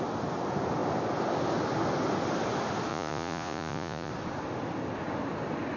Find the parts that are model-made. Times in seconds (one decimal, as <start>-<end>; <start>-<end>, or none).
2.9-4.1